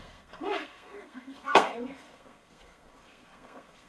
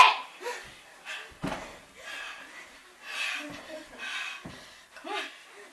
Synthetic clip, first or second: first